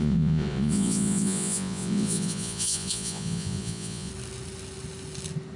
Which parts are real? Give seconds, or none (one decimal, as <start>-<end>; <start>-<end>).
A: 4.1-5.6

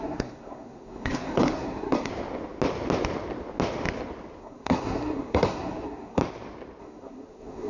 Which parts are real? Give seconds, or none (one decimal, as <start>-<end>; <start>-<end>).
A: 2.1-4.4; 6.2-6.8

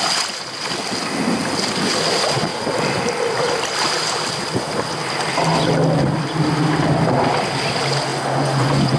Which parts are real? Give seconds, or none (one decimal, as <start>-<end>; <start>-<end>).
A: 0.0-8.1

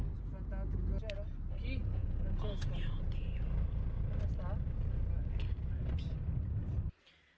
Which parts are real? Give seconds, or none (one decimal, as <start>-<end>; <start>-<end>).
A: 0.0-1.8; 2.7-7.4

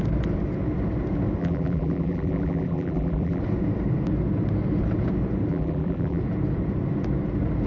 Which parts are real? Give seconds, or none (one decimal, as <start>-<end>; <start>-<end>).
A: 0.0-1.4; 3.4-5.5; 6.2-7.7

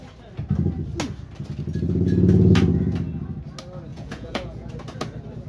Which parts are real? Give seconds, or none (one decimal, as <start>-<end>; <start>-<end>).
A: 0.0-3.9; 4.7-5.5

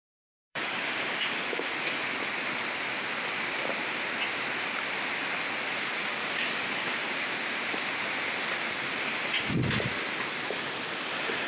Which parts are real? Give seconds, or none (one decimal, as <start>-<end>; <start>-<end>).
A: 0.0-0.4; 1.7-6.1; 7.0-11.5